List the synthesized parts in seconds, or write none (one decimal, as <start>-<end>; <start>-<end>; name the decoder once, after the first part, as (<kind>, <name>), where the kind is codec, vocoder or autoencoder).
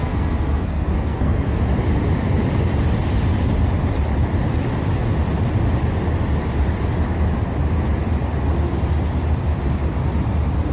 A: 0.0-1.6 (codec, SNAC)